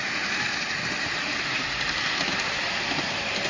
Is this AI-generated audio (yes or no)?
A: no